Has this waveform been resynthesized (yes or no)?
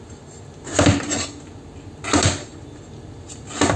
no